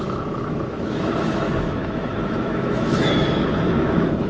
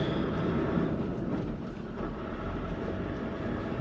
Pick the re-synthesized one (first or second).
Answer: first